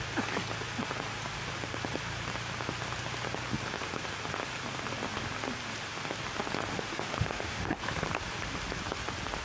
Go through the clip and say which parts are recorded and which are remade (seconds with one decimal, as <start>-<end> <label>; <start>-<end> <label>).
0.0-6.7 recorded; 6.7-7.8 remade; 7.8-9.4 recorded